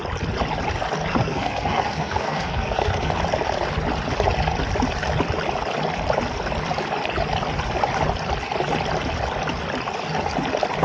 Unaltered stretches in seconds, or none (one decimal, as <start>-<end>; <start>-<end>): 0.0-1.1; 3.1-10.8